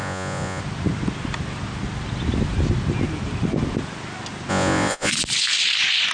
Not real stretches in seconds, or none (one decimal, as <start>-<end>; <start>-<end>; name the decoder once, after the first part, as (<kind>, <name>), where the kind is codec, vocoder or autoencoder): 0.0-0.6 (vocoder, Vocos); 4.5-5.1